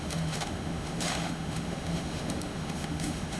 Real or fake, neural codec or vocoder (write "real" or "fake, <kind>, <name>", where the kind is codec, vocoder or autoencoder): fake, autoencoder, DAC-VAE